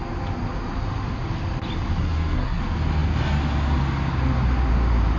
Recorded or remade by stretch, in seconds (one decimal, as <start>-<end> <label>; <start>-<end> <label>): 0.0-2.0 recorded; 2.0-2.6 remade; 2.6-5.2 recorded